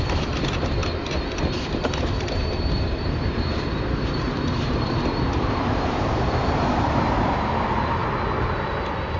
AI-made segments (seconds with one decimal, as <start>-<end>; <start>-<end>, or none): 0.0-0.8; 2.0-8.0